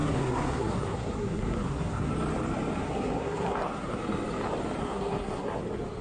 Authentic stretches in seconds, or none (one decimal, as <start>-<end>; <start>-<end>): 2.1-2.8; 4.0-4.8; 5.6-6.0